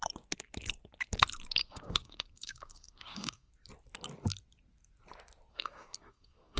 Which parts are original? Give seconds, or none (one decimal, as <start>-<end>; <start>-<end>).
0.0-1.6; 3.5-5.5